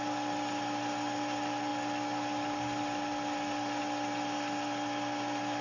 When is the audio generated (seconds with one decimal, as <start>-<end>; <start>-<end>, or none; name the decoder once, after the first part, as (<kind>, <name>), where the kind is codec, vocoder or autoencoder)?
none